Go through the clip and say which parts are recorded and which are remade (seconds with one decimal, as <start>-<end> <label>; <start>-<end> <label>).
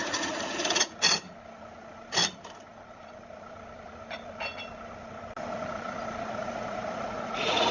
0.0-0.9 remade; 0.9-6.4 recorded; 6.4-7.7 remade